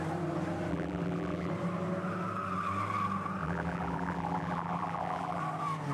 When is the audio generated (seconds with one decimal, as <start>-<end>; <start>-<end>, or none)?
0.7-1.5; 3.4-5.4